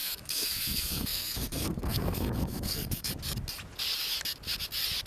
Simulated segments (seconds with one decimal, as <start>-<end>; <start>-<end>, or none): 0.0-3.1